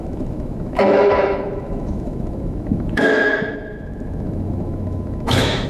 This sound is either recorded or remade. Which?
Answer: remade